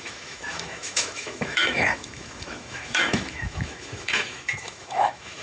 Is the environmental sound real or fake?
fake